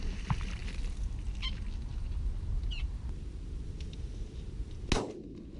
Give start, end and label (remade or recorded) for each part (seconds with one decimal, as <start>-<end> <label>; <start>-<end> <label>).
0.0-5.6 recorded